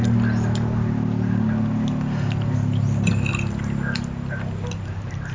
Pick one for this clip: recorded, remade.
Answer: recorded